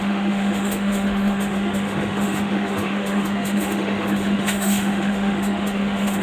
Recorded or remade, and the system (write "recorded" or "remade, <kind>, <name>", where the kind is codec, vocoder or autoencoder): remade, autoencoder, DAC-VAE